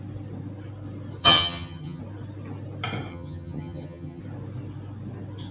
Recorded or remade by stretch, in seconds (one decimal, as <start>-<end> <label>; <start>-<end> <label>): 0.0-1.2 recorded; 1.2-2.0 remade; 2.0-3.1 recorded; 3.1-4.2 remade; 4.2-5.5 recorded